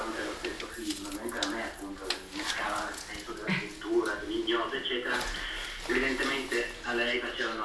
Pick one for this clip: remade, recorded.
recorded